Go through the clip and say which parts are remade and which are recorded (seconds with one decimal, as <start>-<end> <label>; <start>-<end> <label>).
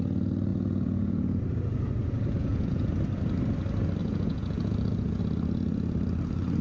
0.0-0.5 recorded; 0.5-1.4 remade; 1.4-2.4 recorded; 2.4-2.9 remade; 2.9-4.0 recorded; 4.0-5.2 remade; 5.2-6.6 recorded